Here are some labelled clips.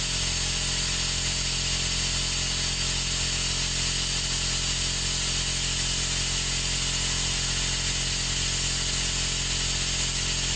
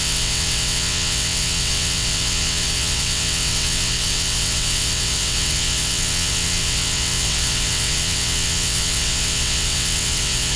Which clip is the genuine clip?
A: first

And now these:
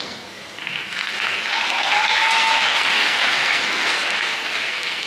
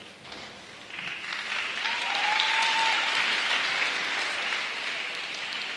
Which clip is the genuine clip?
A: second